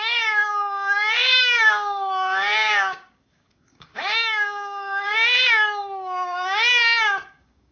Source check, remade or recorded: remade